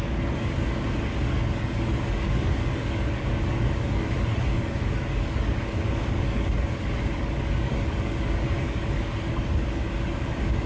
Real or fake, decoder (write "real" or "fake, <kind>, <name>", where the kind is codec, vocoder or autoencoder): fake, codec, DAC